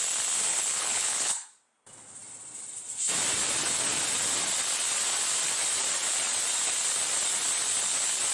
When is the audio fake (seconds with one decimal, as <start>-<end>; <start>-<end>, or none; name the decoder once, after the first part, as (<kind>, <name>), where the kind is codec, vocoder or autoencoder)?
0.5-1.5 (codec, HILCodec)